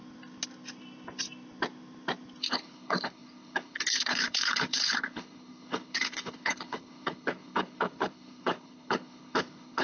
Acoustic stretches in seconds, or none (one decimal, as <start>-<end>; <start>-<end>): 0.0-2.4